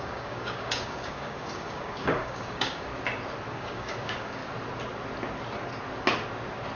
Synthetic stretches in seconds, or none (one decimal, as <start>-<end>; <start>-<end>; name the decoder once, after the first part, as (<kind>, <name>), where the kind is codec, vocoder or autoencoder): 0.0-2.9 (codec, DAC); 3.5-4.4